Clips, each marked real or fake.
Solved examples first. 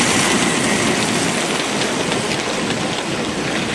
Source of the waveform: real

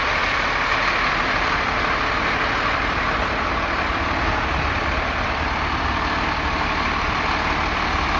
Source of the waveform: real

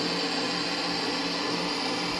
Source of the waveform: real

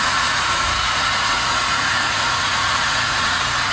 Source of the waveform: fake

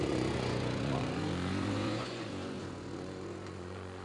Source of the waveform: fake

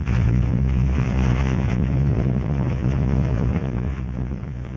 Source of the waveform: fake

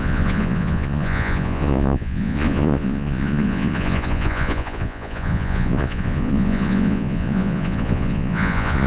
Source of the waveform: fake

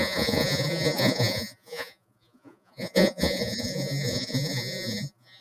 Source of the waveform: fake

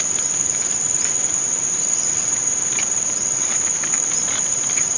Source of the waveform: real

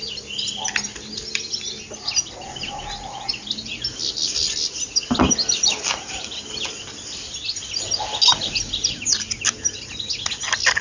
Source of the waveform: real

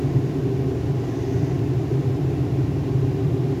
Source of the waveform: real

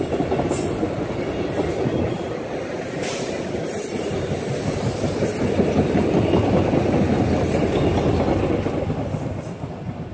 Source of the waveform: real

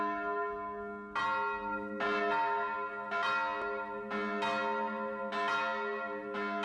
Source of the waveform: real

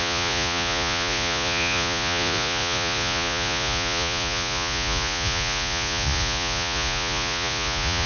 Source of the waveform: fake